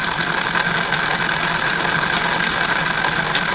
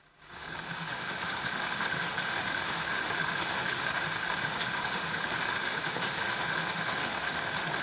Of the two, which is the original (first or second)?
first